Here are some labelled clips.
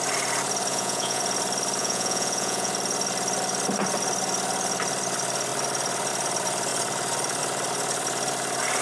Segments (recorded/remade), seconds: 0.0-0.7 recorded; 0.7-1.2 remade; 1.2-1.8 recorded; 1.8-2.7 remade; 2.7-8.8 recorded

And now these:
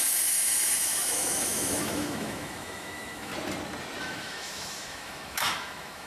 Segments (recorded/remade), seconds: 0.0-3.3 remade; 3.3-4.0 recorded; 4.0-6.1 remade

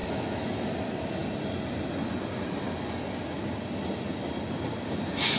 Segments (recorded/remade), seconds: 0.0-0.7 remade; 0.7-5.4 recorded

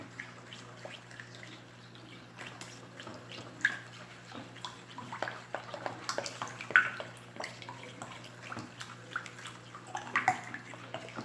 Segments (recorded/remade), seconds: 0.0-11.2 recorded

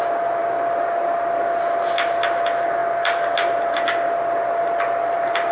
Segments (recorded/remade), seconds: 0.0-5.5 recorded

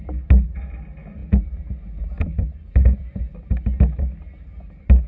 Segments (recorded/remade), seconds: 0.0-5.1 recorded